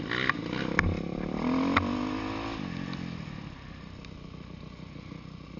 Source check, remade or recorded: recorded